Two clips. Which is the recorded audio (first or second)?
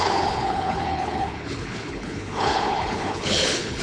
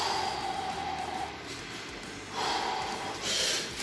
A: second